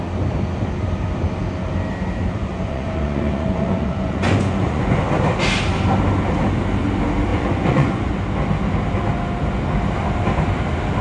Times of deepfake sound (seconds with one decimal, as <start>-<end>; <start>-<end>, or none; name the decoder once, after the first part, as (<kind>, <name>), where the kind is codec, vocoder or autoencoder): 2.4-5.0 (vocoder, Vocos); 7.3-8.1